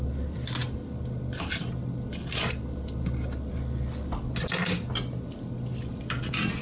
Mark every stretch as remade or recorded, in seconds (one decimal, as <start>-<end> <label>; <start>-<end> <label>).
0.0-6.6 recorded